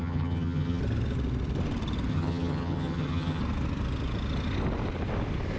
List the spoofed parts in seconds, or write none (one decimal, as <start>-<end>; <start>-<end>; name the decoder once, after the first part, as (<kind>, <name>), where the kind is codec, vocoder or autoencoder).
0.0-0.8 (vocoder, HiFi-GAN); 2.1-3.4